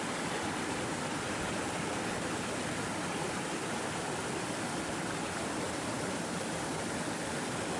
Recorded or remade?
recorded